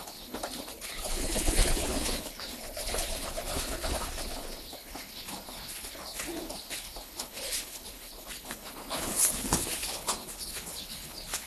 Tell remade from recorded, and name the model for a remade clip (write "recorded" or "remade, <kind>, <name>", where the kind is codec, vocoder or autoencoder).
remade, codec, HILCodec